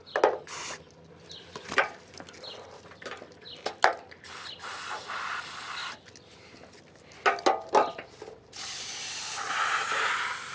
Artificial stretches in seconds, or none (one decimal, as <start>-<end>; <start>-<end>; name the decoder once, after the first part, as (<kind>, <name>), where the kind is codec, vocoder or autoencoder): none